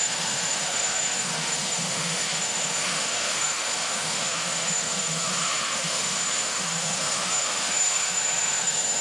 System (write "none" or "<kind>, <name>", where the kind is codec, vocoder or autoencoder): autoencoder, DAC-VAE